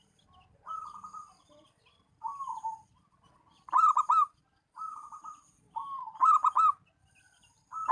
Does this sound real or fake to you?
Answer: real